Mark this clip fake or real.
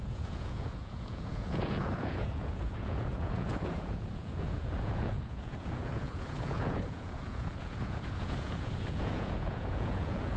fake